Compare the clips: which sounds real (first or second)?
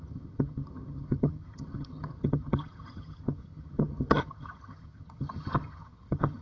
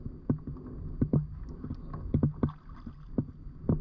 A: second